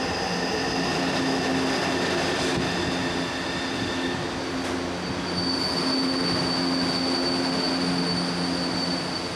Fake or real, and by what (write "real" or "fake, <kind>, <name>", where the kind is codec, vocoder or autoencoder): real